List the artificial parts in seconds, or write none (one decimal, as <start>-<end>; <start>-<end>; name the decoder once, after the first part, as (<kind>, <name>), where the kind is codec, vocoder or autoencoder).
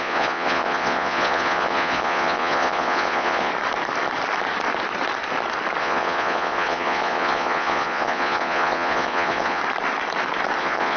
0.0-3.5 (vocoder, Vocos); 5.8-9.6; 10.6-11.0